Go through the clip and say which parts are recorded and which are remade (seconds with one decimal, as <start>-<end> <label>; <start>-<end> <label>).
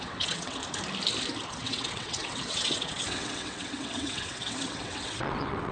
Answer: 0.0-0.6 remade; 0.6-1.5 recorded; 1.5-5.7 remade